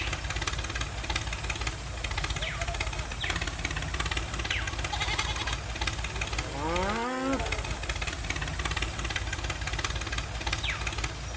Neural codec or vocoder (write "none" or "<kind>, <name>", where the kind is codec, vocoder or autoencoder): none